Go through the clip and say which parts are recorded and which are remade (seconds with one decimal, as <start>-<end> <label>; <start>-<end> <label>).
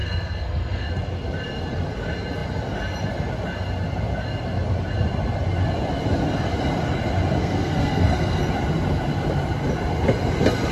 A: 0.0-0.9 remade; 0.9-7.4 recorded; 7.4-8.4 remade; 8.4-10.7 recorded